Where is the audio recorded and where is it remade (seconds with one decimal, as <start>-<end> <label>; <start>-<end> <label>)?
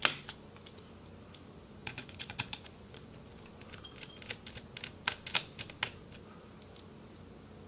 0.0-1.8 recorded; 1.8-3.1 remade; 3.1-7.7 recorded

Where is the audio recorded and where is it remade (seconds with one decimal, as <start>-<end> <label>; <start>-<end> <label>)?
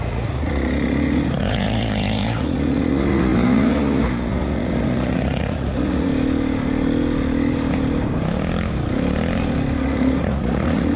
0.0-6.1 remade; 6.1-9.8 recorded; 9.8-11.0 remade